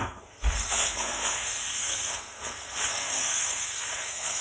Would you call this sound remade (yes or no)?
yes